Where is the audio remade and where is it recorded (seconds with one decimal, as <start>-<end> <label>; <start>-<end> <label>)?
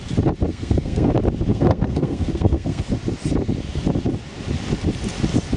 0.0-0.5 recorded; 0.5-1.1 remade; 1.1-1.5 recorded; 1.5-2.8 remade; 2.8-5.6 recorded